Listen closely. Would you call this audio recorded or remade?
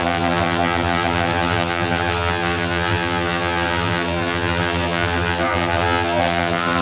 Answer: remade